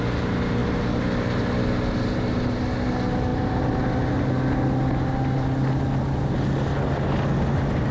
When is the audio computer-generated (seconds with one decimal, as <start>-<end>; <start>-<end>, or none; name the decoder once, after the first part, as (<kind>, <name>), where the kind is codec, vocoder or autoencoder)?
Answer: none